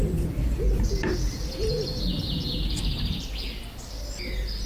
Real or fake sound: real